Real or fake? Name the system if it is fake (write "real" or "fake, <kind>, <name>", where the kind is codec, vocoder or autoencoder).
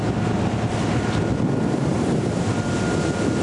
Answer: real